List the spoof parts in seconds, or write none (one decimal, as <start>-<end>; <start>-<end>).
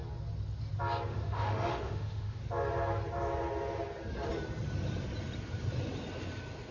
1.1-2.4